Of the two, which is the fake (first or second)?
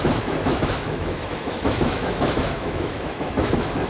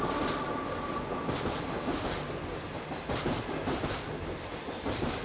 first